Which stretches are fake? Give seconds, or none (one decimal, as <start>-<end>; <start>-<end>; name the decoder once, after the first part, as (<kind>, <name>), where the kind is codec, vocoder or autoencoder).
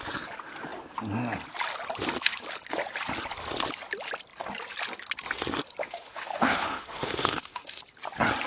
5.8-7.8 (autoencoder, DAC-VAE)